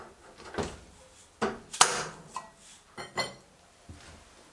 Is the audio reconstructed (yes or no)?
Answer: no